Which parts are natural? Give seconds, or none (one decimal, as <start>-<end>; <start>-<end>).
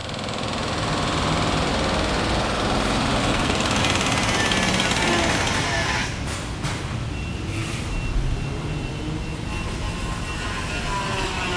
0.0-3.2; 3.8-11.6